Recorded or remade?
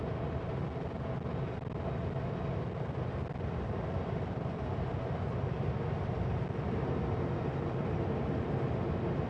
recorded